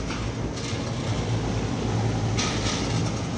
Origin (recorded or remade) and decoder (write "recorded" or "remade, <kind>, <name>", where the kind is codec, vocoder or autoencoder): recorded